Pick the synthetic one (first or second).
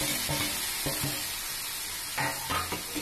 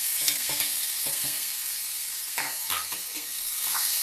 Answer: second